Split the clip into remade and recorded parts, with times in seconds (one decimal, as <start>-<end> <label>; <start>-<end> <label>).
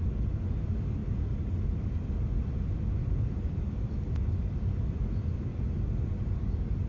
0.0-6.9 recorded